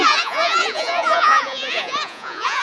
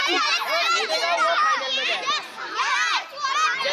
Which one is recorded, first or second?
second